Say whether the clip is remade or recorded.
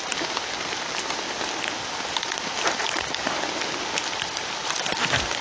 recorded